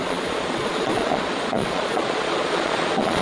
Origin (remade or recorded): remade